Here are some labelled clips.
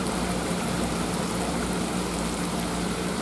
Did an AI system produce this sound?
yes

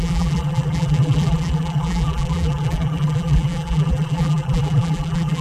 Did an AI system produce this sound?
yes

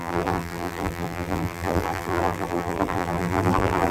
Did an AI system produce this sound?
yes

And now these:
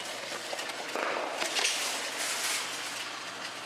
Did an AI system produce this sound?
no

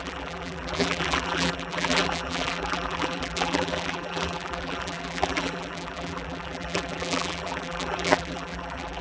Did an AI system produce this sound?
yes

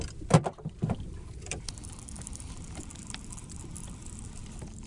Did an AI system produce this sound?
yes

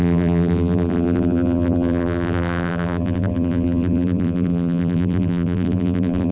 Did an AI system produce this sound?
yes